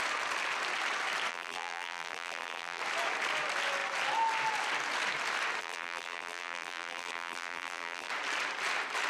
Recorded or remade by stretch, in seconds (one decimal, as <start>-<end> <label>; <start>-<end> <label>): 0.0-1.3 recorded; 1.3-2.8 remade; 2.8-5.6 recorded; 5.6-8.1 remade; 8.1-9.1 recorded